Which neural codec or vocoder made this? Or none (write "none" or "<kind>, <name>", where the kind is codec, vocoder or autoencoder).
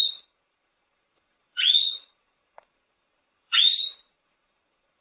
vocoder, Vocos